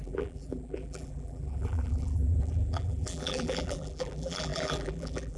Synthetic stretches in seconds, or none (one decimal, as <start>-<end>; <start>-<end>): 0.0-5.4